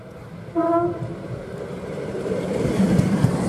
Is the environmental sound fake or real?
fake